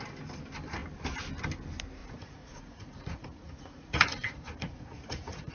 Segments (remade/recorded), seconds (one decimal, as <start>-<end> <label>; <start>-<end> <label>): 0.0-2.0 recorded; 2.0-5.5 remade